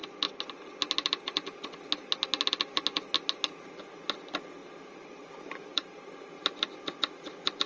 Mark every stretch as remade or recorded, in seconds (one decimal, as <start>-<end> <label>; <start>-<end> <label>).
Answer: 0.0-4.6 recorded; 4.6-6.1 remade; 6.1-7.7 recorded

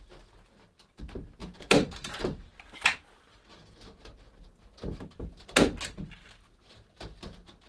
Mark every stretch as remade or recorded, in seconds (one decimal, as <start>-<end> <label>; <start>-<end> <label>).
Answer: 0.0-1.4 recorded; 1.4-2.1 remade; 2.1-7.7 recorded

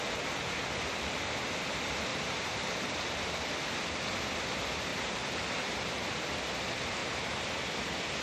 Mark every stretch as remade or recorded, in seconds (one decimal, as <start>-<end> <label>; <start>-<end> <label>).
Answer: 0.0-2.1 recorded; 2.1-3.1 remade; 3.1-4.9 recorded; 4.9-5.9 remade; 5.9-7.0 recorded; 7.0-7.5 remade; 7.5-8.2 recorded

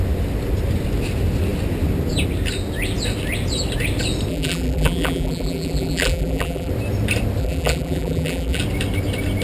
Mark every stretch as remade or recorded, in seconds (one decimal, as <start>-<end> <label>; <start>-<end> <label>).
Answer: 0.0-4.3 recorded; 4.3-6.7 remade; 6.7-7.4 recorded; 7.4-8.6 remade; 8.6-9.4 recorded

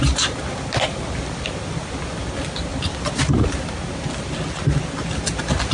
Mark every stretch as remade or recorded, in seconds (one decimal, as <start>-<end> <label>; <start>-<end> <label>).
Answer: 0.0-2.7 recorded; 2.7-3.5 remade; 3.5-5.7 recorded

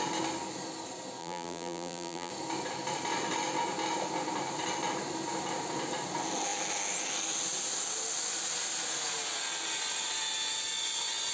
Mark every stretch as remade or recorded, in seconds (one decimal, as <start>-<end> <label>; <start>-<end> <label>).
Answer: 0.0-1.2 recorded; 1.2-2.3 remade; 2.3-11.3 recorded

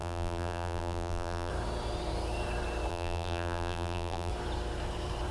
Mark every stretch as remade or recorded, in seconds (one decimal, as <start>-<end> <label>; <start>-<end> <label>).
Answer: 0.0-1.5 remade; 1.5-2.9 recorded; 2.9-4.3 remade; 4.3-5.3 recorded

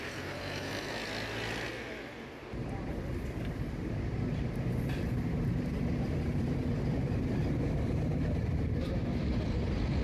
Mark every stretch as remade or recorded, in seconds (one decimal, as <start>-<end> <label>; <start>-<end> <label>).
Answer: 0.0-0.7 remade; 0.7-5.3 recorded; 5.3-10.0 remade